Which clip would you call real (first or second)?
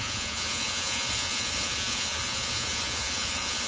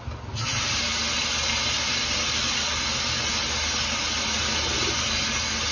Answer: second